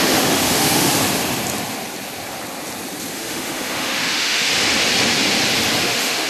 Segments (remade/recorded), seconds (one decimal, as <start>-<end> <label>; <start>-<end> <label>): 0.0-0.9 remade; 0.9-3.1 recorded; 3.1-4.5 remade; 4.5-5.8 recorded; 5.8-6.3 remade